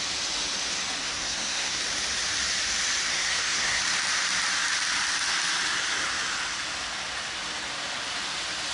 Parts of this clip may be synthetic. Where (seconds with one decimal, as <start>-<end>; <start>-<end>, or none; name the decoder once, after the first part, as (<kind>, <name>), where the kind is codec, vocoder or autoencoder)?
1.0-1.8 (codec, SNAC); 3.1-3.8